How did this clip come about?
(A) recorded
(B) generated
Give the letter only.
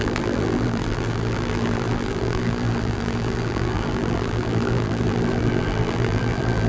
B